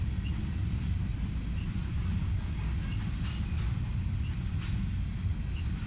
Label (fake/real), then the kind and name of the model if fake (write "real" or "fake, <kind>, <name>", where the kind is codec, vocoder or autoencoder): real